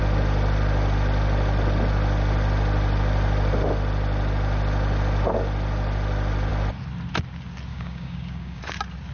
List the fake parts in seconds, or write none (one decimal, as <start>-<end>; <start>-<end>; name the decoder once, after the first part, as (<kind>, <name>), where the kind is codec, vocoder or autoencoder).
7.7-8.6 (codec, DAC)